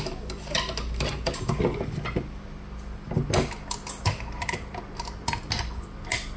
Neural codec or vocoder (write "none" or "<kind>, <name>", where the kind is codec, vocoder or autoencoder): none